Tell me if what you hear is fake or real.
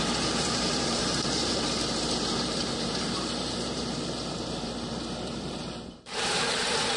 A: fake